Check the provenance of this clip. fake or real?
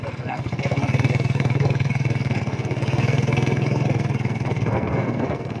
fake